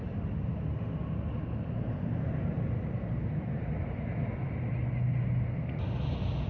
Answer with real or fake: real